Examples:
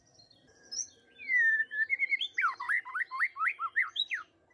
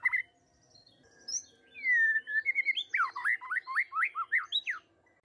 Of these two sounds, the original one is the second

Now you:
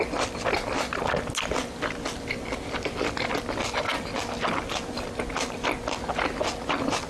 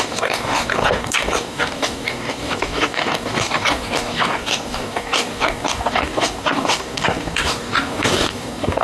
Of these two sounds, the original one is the first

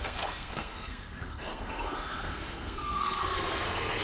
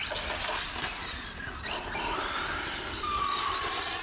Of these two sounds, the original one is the second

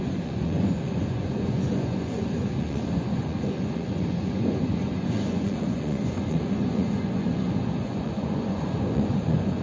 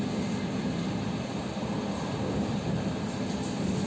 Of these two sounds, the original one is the second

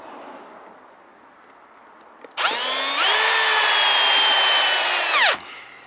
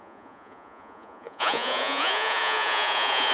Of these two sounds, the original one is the first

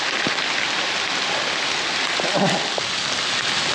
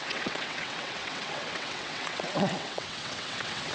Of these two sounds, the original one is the first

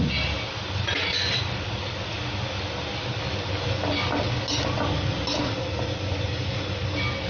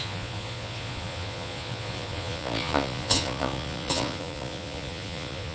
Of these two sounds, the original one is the first